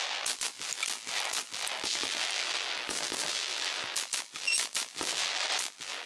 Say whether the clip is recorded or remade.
remade